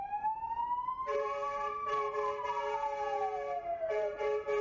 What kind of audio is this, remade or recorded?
remade